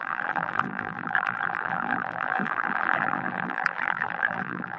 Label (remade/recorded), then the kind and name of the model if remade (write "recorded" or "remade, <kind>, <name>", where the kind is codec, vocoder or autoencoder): remade, vocoder, BigVGAN v2